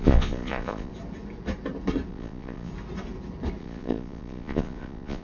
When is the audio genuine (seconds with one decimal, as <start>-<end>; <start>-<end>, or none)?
0.9-2.1; 2.7-3.6